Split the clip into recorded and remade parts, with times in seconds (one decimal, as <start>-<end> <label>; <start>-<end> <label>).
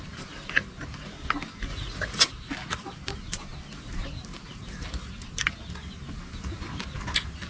0.0-1.7 recorded; 1.7-2.2 remade; 2.2-7.5 recorded